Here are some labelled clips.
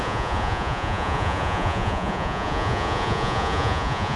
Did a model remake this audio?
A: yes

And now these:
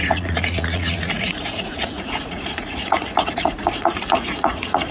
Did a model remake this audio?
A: yes